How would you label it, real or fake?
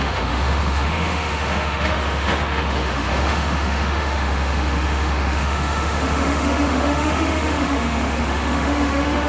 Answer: fake